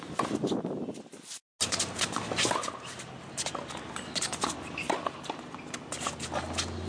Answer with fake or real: real